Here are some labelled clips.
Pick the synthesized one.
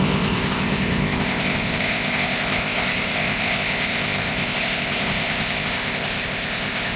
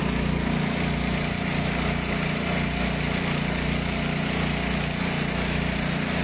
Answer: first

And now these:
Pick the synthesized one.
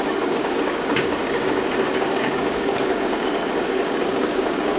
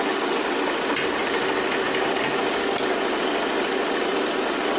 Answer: first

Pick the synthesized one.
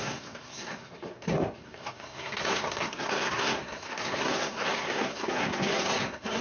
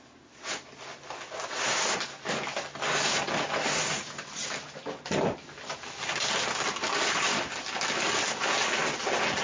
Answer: first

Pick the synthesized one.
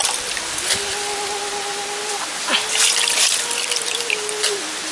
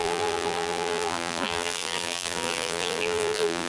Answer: second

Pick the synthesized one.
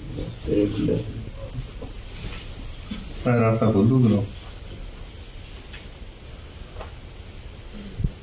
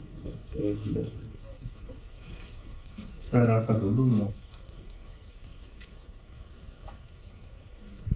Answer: second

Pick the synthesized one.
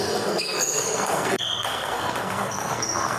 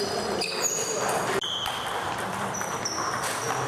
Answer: first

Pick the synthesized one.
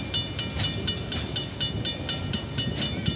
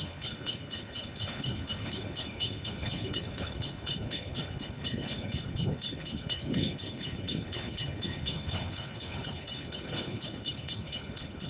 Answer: second